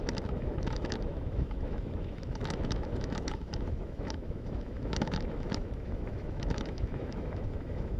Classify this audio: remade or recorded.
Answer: remade